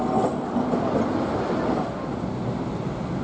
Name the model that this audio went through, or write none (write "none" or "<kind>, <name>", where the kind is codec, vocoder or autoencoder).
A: none